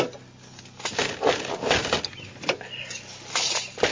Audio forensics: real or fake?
real